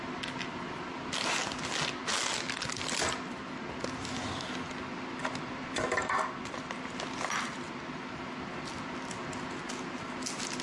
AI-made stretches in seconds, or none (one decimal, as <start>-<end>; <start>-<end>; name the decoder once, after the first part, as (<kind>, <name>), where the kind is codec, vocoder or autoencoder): none